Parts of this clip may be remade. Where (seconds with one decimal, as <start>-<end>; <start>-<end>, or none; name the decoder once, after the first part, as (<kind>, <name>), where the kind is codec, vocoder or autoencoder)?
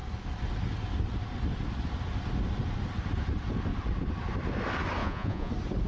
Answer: 5.0-5.5 (vocoder, Vocos)